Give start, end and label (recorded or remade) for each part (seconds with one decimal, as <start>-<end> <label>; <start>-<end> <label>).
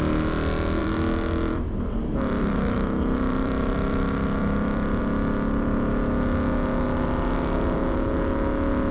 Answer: 0.0-0.8 recorded; 0.8-5.0 remade; 5.0-8.9 recorded